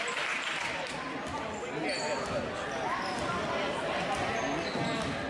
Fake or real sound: real